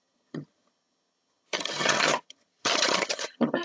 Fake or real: fake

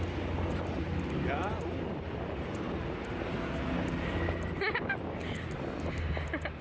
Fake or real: real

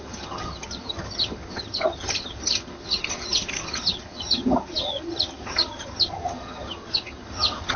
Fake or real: fake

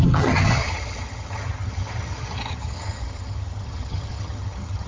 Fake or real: fake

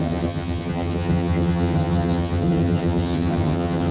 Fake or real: fake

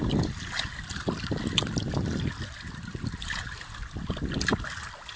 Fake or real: real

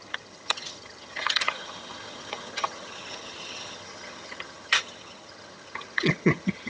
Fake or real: fake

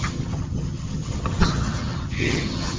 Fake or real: fake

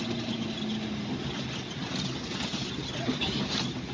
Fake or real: real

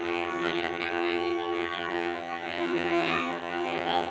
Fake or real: fake